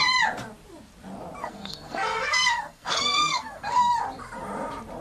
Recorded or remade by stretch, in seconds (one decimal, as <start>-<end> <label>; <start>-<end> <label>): 0.0-1.4 recorded; 1.4-3.9 remade; 3.9-5.0 recorded

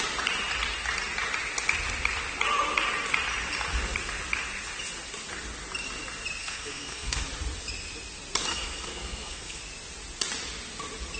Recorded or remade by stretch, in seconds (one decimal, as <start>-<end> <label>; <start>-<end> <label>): 0.0-6.4 recorded; 6.4-7.2 remade; 7.2-8.5 recorded; 8.5-9.6 remade; 9.6-11.2 recorded

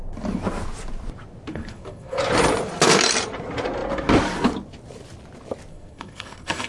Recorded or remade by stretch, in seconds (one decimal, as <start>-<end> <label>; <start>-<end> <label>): 0.0-1.5 recorded; 1.5-2.2 remade; 2.2-5.7 recorded; 5.7-6.7 remade

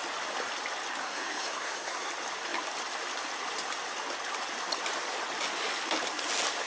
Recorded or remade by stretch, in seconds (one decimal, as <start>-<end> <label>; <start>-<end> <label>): 0.0-1.0 recorded; 1.0-2.1 remade; 2.1-6.7 recorded